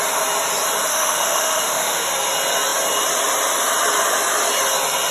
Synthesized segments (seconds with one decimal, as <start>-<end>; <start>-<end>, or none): 0.9-2.1